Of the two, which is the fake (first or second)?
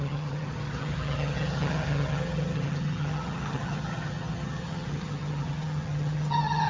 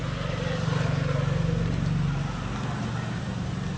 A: first